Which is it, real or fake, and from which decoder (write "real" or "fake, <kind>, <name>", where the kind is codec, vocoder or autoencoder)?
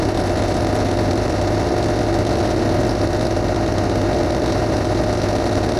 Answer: real